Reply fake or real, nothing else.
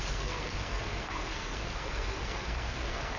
fake